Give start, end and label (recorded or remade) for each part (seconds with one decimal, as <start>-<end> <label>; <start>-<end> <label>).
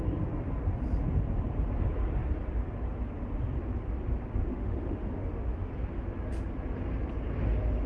0.0-4.5 recorded; 4.5-5.7 remade; 5.7-7.9 recorded